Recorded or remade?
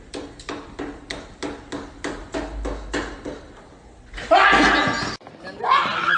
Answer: recorded